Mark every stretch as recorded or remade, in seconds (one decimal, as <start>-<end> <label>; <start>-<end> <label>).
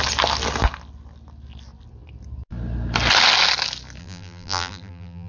0.0-4.0 recorded; 4.0-5.3 remade